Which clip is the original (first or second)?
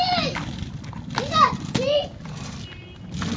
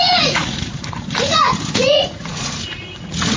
first